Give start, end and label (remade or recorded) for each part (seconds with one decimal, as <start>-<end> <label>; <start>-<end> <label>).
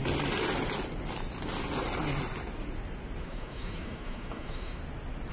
0.0-3.2 recorded; 3.2-4.8 remade; 4.8-5.3 recorded